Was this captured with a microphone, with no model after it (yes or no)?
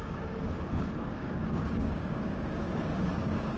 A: no